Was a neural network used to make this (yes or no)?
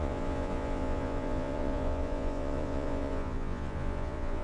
yes